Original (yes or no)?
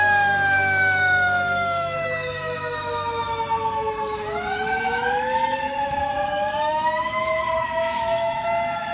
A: no